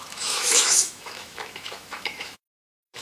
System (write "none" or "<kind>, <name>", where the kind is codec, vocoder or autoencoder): autoencoder, DAC-VAE